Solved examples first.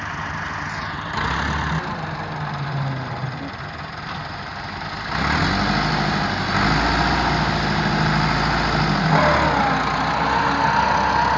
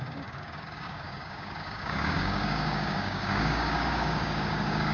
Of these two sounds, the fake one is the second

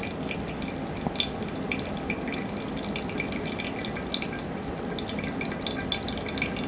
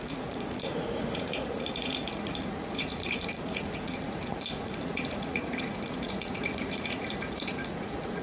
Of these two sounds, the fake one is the second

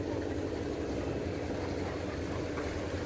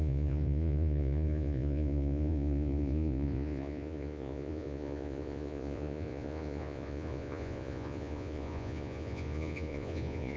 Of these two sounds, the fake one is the second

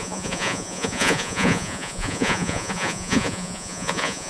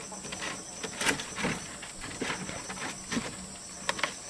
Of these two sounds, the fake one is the first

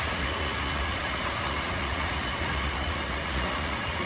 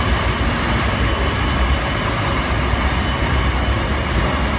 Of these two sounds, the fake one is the first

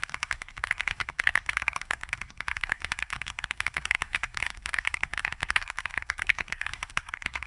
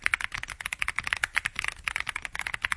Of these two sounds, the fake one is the first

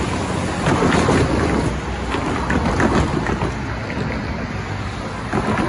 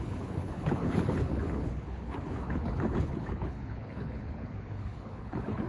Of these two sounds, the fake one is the second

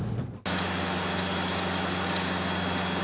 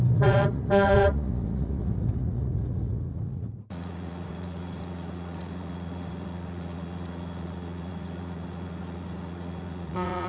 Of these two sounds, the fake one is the second